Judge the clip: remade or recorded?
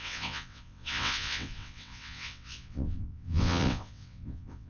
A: remade